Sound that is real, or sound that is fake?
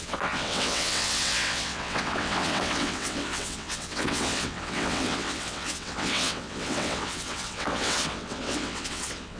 fake